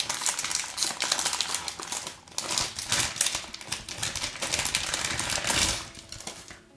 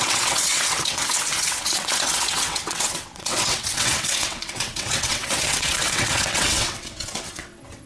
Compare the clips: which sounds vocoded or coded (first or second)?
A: second